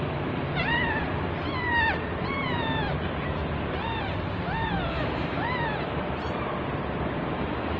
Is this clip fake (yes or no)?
yes